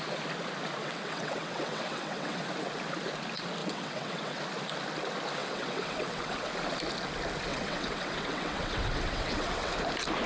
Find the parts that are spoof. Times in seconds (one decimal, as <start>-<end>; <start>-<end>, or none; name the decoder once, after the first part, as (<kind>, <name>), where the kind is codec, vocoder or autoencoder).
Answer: 0.8-2.4 (vocoder, WaveNeXt); 3.6-4.4; 5.4-6.5; 7.5-9.7